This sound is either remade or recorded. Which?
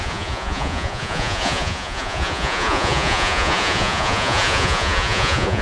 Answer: remade